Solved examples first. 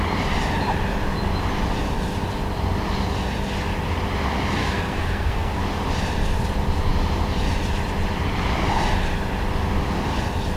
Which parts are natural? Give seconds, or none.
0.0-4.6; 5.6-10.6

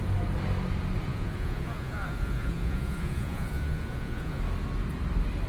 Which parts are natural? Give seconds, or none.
0.0-1.1; 4.4-5.5

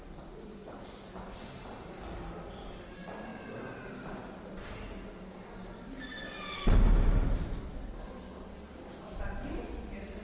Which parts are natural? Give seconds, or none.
0.0-3.3; 3.8-10.2

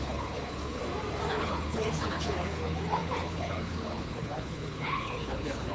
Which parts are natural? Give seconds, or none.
0.8-1.3

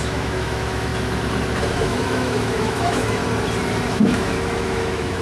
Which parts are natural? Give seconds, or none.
0.9-1.6; 3.2-3.9

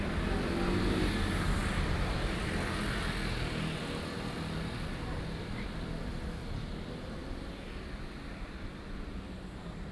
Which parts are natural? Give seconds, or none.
0.0-9.9

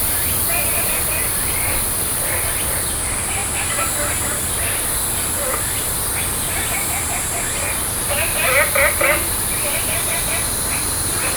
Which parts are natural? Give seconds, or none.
0.0-11.4